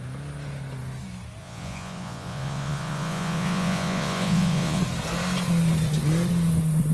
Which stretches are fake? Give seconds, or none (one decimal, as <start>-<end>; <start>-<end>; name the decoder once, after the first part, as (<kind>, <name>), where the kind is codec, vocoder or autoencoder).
1.4-4.8 (vocoder, Vocos)